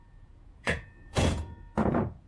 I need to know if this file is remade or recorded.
remade